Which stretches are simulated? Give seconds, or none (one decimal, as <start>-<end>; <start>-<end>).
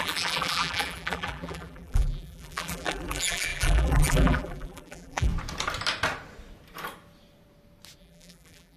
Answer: 0.0-5.3; 8.0-8.8